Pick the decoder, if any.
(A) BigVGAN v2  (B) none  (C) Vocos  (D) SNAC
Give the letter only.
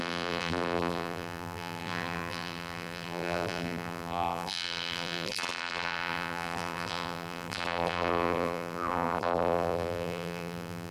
A